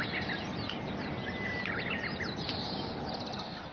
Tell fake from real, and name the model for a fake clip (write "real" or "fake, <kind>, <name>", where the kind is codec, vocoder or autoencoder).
real